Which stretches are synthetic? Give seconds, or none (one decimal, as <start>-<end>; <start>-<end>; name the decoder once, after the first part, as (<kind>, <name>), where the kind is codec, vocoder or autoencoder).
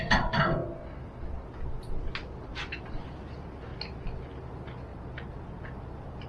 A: 0.0-0.6 (vocoder, BigVGAN v2); 2.8-3.7; 4.5-4.9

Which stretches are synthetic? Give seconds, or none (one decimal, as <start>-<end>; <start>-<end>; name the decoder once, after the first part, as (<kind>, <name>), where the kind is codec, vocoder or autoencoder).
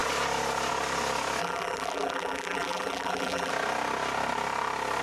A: 1.4-3.5 (vocoder, BigVGAN v2)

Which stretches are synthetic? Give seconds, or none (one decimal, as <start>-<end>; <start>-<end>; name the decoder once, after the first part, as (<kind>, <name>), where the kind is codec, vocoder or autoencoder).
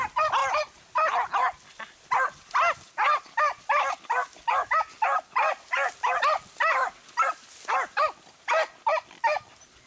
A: none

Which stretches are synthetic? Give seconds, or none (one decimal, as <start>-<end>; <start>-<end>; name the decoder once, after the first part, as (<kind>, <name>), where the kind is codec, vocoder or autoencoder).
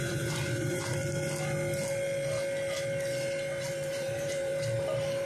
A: 0.0-1.0 (vocoder, BigVGAN v2); 3.7-4.5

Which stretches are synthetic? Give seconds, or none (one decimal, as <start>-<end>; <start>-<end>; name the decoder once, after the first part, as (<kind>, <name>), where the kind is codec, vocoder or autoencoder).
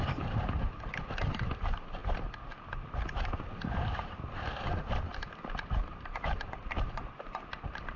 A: 0.0-2.0 (vocoder, BigVGAN v2); 3.1-5.1; 5.7-8.0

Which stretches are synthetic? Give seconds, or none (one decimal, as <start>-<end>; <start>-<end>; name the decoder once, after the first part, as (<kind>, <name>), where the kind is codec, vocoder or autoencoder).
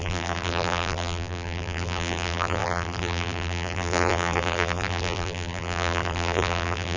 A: 0.0-7.0 (vocoder, BigVGAN v2)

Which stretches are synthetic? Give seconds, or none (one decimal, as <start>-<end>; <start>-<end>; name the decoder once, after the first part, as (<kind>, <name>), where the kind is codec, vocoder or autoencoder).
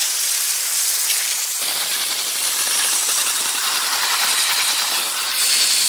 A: 0.0-5.9 (vocoder, BigVGAN v2)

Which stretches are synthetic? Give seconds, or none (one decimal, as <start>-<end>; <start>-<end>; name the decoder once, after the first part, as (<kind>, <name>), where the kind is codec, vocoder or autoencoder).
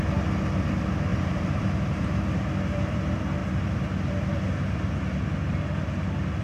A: 1.1-2.2 (vocoder, BigVGAN v2)